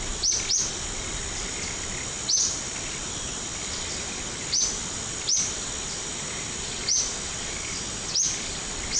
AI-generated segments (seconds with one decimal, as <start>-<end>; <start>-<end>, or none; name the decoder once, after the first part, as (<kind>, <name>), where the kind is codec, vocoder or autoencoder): none